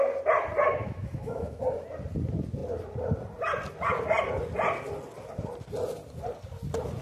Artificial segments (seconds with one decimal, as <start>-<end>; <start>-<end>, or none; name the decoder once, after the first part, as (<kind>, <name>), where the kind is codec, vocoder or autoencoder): 0.7-1.6 (autoencoder, DAC-VAE)